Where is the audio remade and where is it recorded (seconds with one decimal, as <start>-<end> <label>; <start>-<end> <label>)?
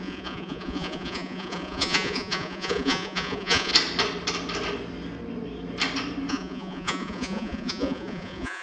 0.0-3.7 remade; 3.7-6.3 recorded; 6.3-8.6 remade